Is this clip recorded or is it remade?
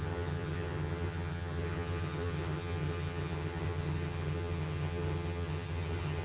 remade